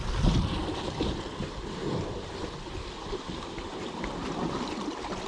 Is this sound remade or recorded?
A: recorded